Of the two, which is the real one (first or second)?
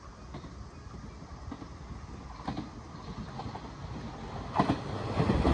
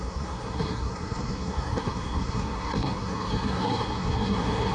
first